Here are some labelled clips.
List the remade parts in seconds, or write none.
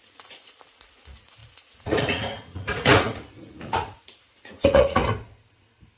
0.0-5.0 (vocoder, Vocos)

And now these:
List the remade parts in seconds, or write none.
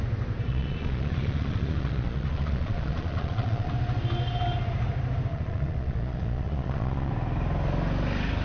0.5-3.7 (vocoder, Vocos); 5.3-7.1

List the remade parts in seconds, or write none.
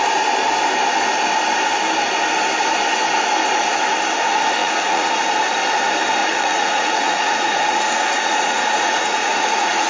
4.6-5.1 (vocoder, Vocos); 6.2-9.9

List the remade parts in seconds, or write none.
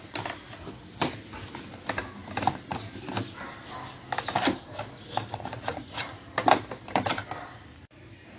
5.5-6.2 (vocoder, Vocos)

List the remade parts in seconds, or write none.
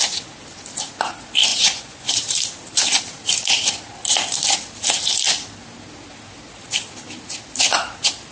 1.5-2.1 (vocoder, Vocos)